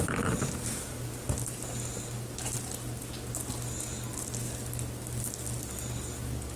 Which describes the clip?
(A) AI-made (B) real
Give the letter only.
B